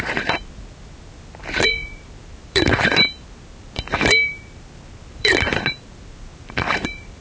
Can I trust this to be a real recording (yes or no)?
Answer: no